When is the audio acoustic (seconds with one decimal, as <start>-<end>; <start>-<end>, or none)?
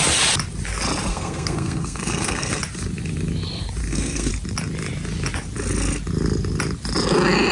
0.0-1.1; 2.6-3.8; 4.3-7.5